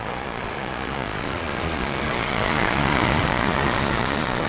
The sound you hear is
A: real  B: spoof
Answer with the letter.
B